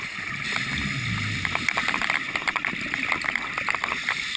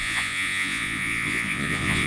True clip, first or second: first